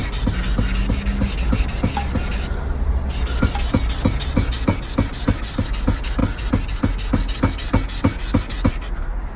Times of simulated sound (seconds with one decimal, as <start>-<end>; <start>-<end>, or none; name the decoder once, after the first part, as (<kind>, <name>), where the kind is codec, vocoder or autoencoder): none